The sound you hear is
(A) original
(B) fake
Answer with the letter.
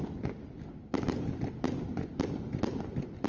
A